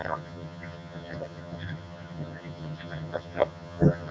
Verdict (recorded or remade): remade